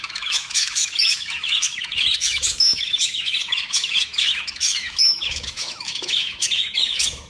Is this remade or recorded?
remade